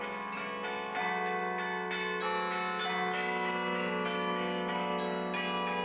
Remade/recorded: recorded